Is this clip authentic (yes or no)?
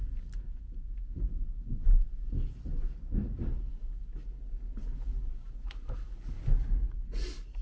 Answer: yes